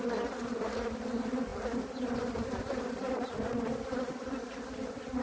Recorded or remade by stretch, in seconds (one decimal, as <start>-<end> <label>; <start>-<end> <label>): 0.0-5.2 recorded